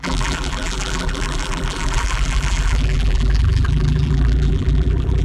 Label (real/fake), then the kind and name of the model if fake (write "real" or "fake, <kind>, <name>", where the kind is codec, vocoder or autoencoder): fake, vocoder, BigVGAN v2